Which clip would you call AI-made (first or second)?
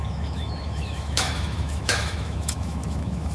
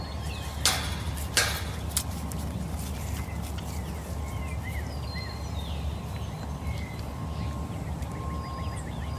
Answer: first